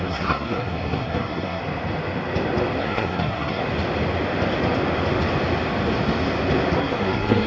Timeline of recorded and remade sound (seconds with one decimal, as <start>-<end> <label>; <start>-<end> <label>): 0.0-1.6 remade; 1.6-2.8 recorded; 2.8-3.6 remade; 3.6-6.8 recorded; 6.8-7.5 remade